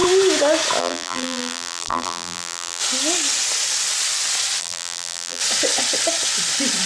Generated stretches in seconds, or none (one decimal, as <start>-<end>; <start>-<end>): 0.8-2.8; 4.6-5.4

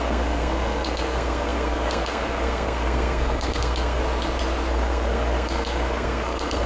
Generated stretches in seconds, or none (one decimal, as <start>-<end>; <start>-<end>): 0.0-4.0; 4.7-6.7

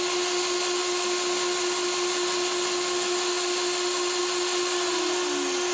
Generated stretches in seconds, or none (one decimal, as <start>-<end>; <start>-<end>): none

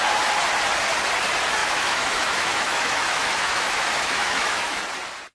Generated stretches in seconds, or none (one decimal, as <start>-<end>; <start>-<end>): 1.6-4.8

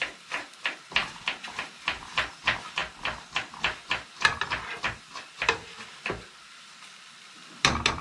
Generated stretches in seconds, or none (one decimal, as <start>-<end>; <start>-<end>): 1.0-2.3